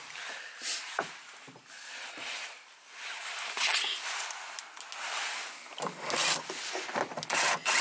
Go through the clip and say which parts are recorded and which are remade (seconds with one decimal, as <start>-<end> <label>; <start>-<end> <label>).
0.0-7.8 recorded